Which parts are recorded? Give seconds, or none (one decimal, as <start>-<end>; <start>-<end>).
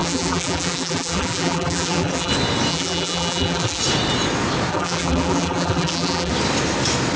2.3-2.7; 3.8-4.7; 6.3-7.2